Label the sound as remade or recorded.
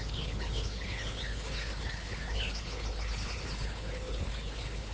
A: remade